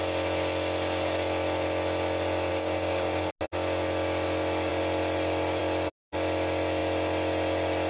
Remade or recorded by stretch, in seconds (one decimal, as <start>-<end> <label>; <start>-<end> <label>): 0.0-2.5 recorded; 2.5-3.3 remade; 3.3-7.9 recorded